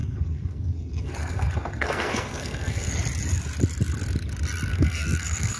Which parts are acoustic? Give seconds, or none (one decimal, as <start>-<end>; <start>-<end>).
2.9-4.7